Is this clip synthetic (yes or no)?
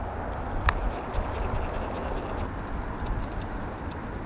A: no